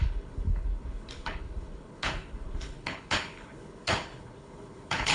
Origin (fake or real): fake